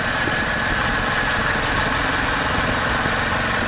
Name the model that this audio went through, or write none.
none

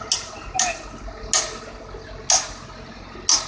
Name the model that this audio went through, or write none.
none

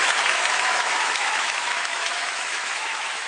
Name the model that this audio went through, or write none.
autoencoder, DAC-VAE